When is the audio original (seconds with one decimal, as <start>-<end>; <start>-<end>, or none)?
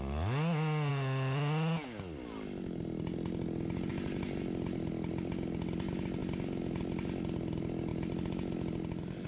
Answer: 0.0-9.3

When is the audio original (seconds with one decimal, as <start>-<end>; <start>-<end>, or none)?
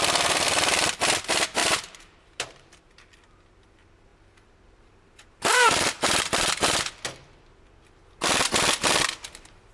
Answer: 0.0-1.6; 2.7-4.1; 6.8-9.7